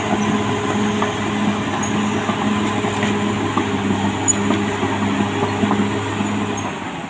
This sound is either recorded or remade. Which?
recorded